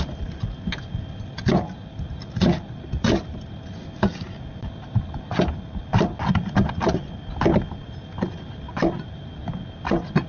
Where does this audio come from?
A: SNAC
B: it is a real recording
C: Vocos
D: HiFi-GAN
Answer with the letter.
B